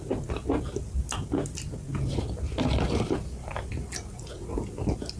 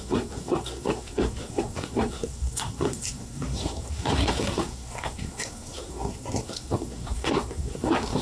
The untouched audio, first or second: first